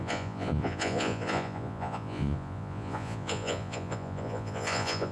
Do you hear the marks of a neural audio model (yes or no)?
yes